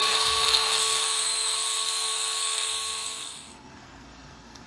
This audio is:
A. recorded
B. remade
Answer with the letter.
B